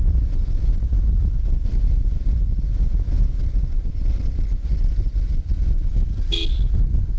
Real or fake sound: real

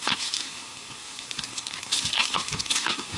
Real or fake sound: fake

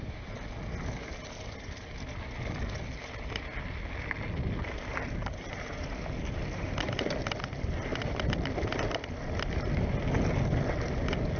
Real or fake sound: real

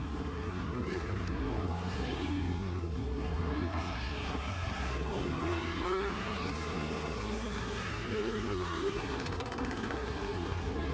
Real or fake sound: fake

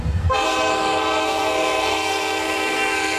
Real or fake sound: fake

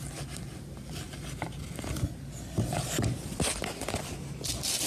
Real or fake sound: real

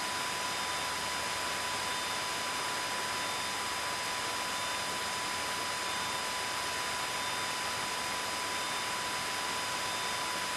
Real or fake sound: real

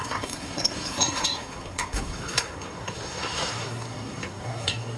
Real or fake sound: fake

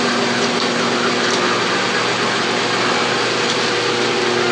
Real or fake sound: real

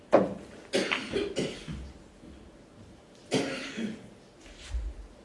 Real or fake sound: real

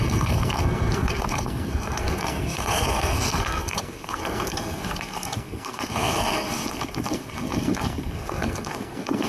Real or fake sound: fake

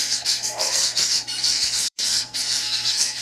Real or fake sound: fake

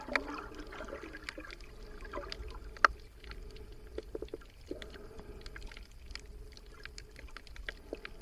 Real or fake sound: real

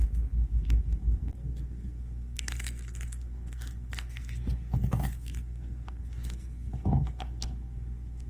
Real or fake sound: fake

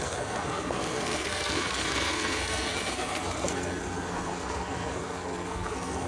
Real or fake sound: fake